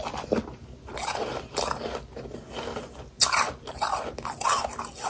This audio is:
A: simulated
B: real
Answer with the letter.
B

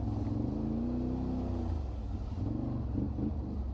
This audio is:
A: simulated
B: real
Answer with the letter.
B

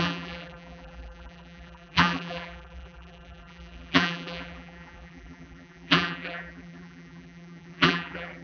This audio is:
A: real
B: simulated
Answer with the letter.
B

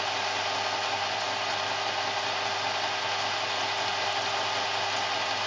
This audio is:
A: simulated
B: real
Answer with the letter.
B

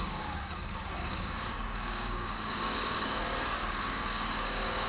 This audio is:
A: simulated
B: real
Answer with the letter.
A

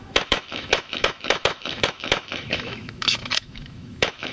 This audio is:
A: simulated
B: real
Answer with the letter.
A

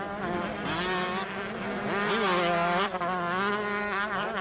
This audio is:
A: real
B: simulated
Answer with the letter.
A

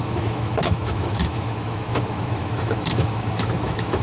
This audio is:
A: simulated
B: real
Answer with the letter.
A